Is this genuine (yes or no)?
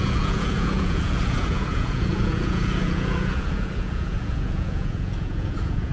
no